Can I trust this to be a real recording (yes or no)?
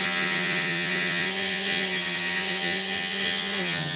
no